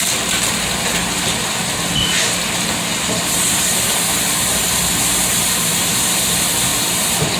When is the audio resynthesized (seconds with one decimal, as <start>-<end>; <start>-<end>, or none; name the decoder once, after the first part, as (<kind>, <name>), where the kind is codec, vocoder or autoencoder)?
2.9-6.3 (vocoder, BigVGAN v2)

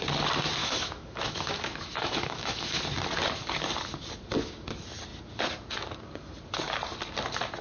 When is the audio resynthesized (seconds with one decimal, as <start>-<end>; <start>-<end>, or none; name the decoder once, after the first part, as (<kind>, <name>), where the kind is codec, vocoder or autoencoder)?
0.6-2.8 (autoencoder, DAC-VAE)

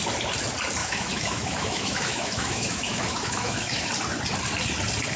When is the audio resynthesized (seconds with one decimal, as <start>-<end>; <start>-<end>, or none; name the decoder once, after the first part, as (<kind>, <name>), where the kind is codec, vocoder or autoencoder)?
0.8-3.9 (autoencoder, DAC-VAE)